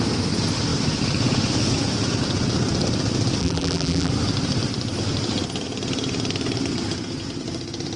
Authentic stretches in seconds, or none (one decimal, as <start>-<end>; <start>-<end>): 0.0-3.4; 4.1-8.0